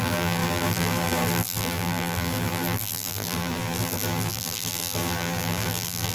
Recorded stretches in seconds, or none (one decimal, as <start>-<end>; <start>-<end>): none